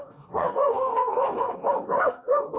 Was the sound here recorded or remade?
remade